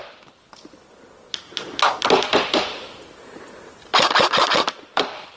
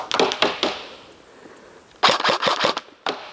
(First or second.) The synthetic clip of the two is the first